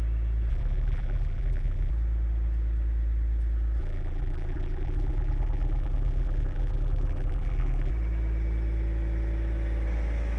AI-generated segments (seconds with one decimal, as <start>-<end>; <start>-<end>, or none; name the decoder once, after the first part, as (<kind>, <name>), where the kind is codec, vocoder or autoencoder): 0.5-1.9 (vocoder, BigVGAN v2); 3.8-7.9

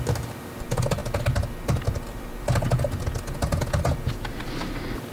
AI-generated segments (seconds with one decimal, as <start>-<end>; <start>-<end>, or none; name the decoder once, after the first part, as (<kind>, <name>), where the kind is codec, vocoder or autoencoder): none

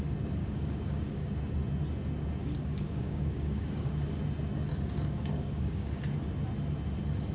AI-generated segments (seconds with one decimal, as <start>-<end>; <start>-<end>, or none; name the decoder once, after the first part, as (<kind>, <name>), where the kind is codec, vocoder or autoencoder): 0.4-1.4 (codec, DAC); 2.4-3.9; 4.7-5.9

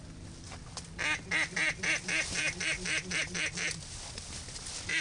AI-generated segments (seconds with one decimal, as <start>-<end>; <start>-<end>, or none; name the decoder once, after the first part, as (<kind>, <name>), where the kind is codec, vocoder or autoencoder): none